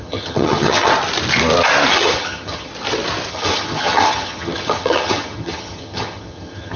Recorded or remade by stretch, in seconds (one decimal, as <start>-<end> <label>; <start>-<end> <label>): 0.0-0.9 remade; 0.9-1.9 recorded; 1.9-2.7 remade; 2.7-3.3 recorded; 3.3-6.8 remade